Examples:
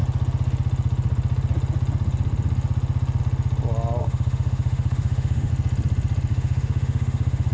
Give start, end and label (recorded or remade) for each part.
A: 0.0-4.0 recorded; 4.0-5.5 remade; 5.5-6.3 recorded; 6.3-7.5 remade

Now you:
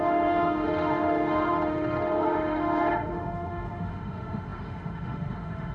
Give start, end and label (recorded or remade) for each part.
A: 0.0-5.7 remade

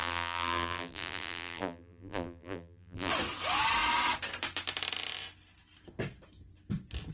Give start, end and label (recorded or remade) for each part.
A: 0.0-3.1 remade; 3.1-7.1 recorded

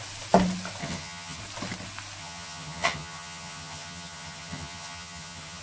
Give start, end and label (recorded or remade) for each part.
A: 0.0-0.8 recorded; 0.8-1.4 remade; 1.4-2.2 recorded; 2.2-5.6 remade

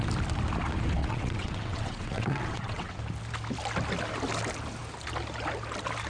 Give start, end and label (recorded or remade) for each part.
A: 0.0-1.0 recorded; 1.0-3.0 remade; 3.0-6.1 recorded

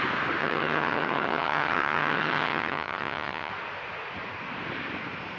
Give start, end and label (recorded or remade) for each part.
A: 0.0-0.4 recorded; 0.4-3.5 remade; 3.5-5.4 recorded

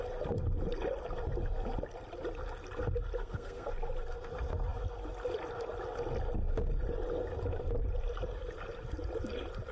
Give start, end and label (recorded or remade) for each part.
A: 0.0-3.2 recorded; 3.2-3.7 remade; 3.7-9.7 recorded

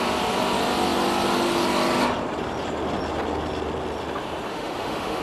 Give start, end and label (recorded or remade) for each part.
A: 0.0-4.5 recorded; 4.5-5.2 remade